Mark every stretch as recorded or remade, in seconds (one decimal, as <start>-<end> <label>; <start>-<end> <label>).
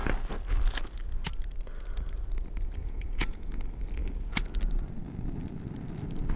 0.0-2.8 recorded; 2.8-3.6 remade; 3.6-6.4 recorded